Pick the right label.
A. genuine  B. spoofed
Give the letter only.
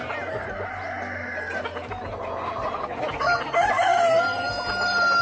A